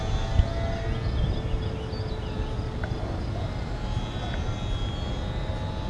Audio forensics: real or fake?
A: real